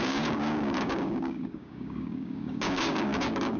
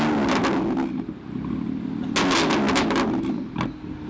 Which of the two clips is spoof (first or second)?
first